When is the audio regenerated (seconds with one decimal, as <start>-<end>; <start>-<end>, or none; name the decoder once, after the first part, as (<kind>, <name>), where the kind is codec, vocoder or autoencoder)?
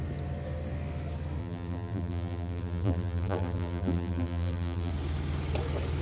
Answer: 1.4-4.9 (vocoder, BigVGAN v2)